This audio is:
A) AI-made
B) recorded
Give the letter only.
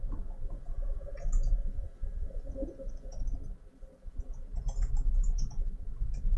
A